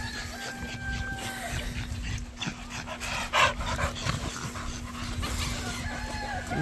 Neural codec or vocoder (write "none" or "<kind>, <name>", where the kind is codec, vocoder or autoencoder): none